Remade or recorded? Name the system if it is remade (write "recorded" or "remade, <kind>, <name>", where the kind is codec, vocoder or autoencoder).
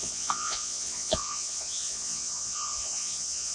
remade, vocoder, Vocos